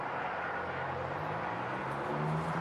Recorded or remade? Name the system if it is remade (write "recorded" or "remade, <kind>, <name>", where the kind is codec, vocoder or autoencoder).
recorded